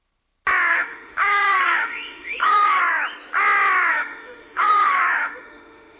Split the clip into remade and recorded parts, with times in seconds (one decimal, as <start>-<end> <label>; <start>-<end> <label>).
0.0-0.7 recorded; 0.7-2.8 remade; 2.8-3.9 recorded; 3.9-6.0 remade